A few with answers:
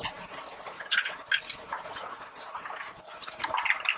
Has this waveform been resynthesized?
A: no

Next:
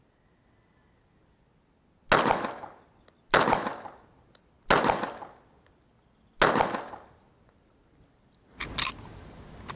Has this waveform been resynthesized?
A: no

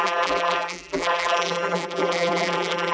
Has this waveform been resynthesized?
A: yes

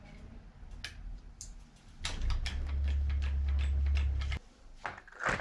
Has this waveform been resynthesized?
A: no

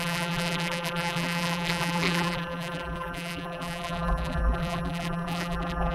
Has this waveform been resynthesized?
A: yes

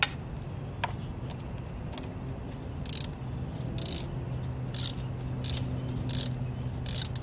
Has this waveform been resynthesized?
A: no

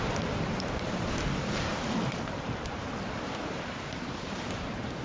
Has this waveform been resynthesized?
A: yes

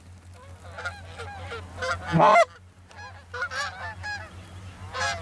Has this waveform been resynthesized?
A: no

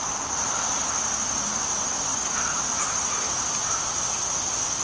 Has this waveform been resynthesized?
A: no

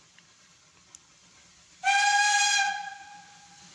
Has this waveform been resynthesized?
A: no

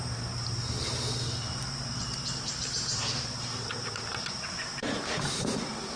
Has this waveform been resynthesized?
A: yes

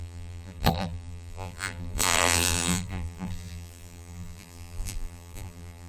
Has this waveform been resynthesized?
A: yes